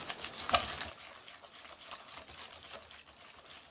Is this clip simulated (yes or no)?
no